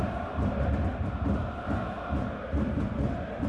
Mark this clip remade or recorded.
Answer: recorded